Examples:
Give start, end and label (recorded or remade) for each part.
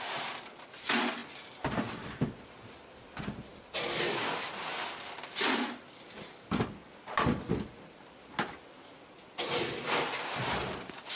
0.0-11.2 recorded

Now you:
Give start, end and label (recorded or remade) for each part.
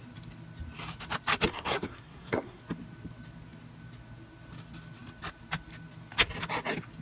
0.0-1.5 recorded; 1.5-2.6 remade; 2.6-7.0 recorded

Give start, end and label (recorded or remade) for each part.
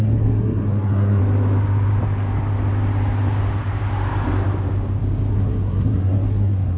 0.0-1.2 remade; 1.2-5.3 recorded; 5.3-6.8 remade